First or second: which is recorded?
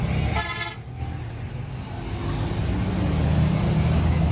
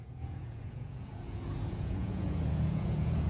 first